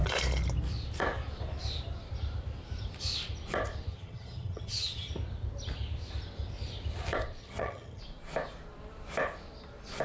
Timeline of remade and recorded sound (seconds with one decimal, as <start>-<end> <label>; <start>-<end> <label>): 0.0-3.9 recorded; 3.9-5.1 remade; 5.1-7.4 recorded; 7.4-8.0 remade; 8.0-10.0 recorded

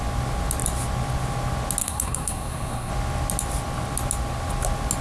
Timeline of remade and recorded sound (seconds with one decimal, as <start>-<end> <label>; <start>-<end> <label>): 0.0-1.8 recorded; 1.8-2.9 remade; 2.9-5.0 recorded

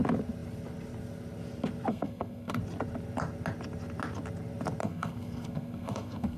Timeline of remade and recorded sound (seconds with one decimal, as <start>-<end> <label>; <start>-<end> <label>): 0.0-1.9 recorded; 1.9-2.6 remade; 2.6-4.8 recorded; 4.8-6.4 remade